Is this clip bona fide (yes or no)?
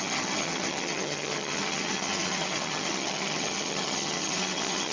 no